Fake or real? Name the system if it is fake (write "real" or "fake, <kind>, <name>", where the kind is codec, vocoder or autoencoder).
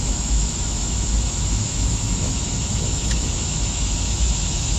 fake, autoencoder, DAC-VAE